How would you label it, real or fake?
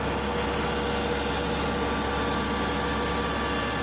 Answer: real